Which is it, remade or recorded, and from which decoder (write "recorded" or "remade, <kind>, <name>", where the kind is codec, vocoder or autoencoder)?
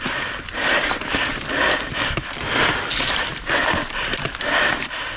recorded